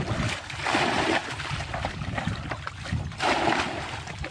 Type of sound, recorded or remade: recorded